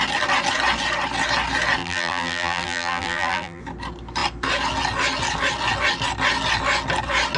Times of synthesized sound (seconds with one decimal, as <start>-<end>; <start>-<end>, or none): 1.8-3.6